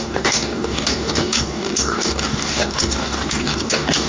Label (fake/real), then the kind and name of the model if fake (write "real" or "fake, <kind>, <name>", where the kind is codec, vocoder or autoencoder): fake, codec, DAC